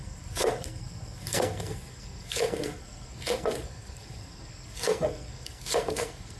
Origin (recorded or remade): remade